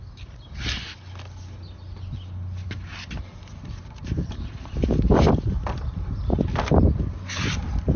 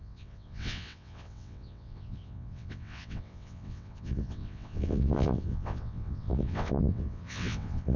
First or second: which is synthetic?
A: second